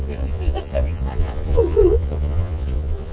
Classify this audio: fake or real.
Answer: fake